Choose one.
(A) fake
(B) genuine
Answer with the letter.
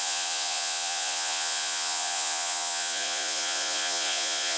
A